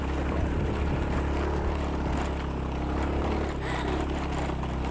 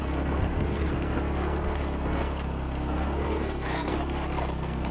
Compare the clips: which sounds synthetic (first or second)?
second